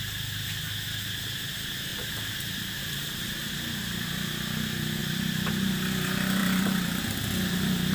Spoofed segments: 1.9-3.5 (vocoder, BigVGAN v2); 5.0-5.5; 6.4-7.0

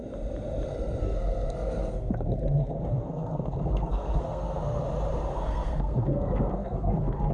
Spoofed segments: 1.0-4.8 (codec, SNAC); 5.3-7.3

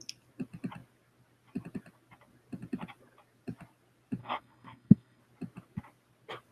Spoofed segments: 4.2-5.2 (codec, SNAC)

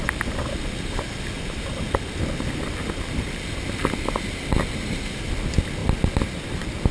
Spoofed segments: none

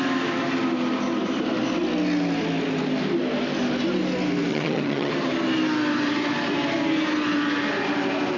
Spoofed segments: 4.5-5.1 (vocoder, HiFi-GAN)

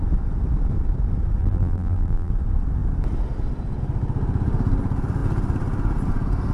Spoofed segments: 1.4-2.3 (vocoder, BigVGAN v2)

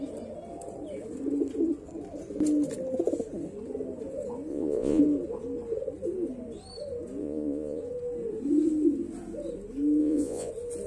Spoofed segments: 4.5-5.0 (vocoder, Vocos); 7.2-7.8; 10.0-10.5